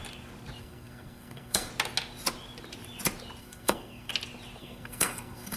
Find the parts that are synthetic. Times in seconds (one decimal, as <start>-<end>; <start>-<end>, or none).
0.6-1.7; 3.4-4.1; 4.6-5.6